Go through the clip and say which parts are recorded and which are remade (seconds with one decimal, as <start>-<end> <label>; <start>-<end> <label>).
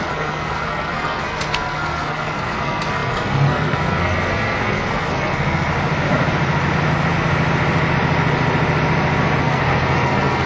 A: 0.0-5.7 remade; 5.7-9.4 recorded; 9.4-10.5 remade